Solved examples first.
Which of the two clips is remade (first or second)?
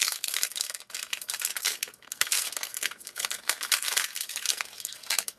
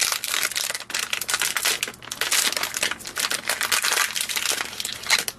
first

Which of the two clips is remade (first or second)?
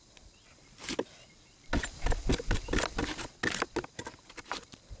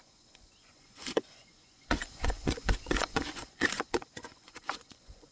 second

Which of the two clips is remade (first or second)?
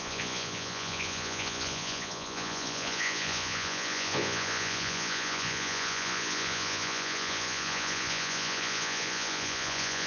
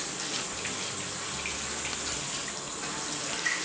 first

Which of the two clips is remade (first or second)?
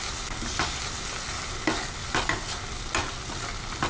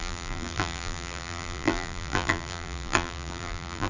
second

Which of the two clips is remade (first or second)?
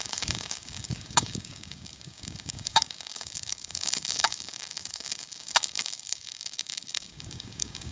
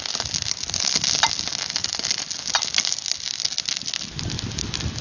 first